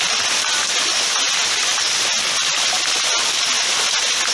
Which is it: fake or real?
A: real